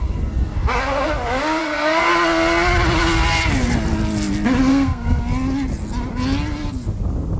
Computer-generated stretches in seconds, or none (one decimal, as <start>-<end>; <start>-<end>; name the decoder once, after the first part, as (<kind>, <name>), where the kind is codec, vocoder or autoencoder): 1.6-2.1 (codec, SNAC); 4.7-5.2